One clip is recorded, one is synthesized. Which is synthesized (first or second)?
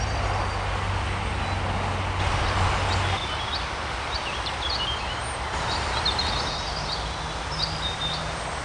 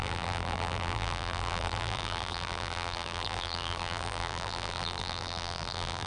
second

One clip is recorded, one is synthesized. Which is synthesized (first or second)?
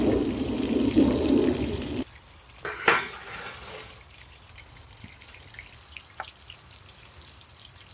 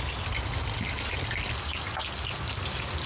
first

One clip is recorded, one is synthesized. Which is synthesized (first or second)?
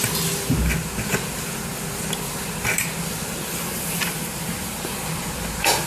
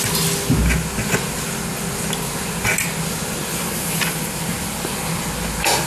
first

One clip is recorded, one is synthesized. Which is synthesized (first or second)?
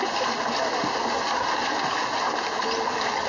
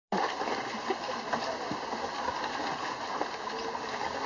second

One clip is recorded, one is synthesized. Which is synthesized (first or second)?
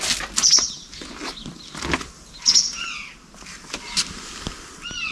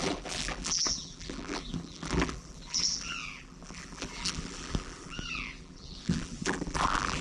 second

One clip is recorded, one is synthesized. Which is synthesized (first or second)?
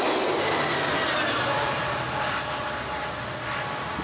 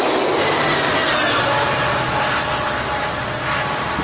first